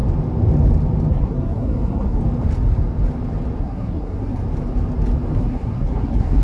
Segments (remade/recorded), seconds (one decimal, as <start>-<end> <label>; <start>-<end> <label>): 0.0-1.1 recorded; 1.1-2.2 remade; 2.2-3.6 recorded; 3.6-4.4 remade; 4.4-5.4 recorded; 5.4-6.4 remade